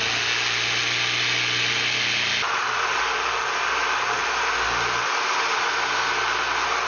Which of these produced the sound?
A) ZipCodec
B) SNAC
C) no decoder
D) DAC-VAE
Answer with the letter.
C